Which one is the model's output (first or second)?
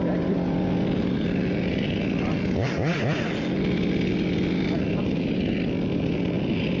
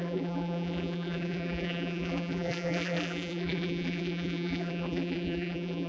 second